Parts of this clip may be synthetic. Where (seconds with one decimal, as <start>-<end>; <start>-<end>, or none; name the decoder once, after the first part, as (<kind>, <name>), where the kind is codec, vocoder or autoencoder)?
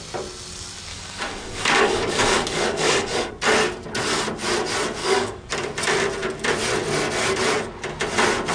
0.9-3.3 (codec, DAC); 5.0-5.5